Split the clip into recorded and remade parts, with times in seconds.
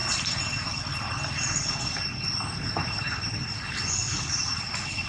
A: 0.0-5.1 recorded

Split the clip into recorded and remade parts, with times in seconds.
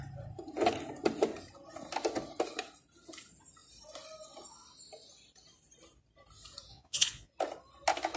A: 0.0-6.7 recorded; 6.7-7.3 remade; 7.3-8.2 recorded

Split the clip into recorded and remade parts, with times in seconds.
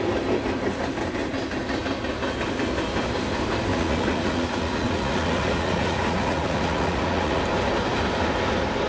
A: 0.0-3.7 recorded; 3.7-7.4 remade; 7.4-8.9 recorded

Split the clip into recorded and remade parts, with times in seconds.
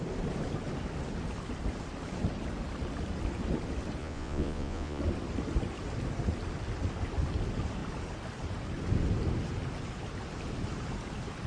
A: 0.0-4.0 recorded; 4.0-5.0 remade; 5.0-11.5 recorded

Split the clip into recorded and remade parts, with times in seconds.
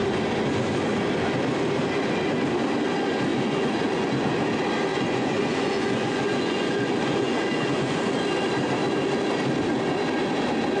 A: 0.0-3.3 recorded; 3.3-4.3 remade; 4.3-4.9 recorded; 4.9-8.0 remade; 8.0-10.8 recorded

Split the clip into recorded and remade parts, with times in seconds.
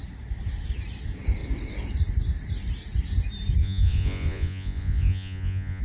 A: 0.0-3.6 recorded; 3.6-5.8 remade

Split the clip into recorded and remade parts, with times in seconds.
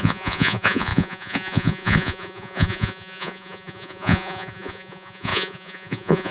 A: 0.0-6.3 remade